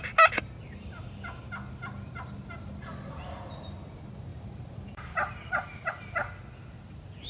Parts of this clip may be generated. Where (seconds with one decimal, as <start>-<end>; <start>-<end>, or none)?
4.3-5.9